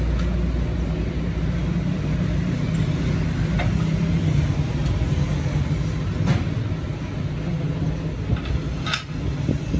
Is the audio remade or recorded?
recorded